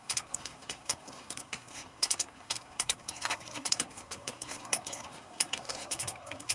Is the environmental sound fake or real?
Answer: fake